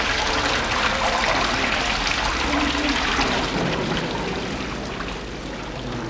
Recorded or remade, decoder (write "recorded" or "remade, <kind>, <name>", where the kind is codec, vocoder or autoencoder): recorded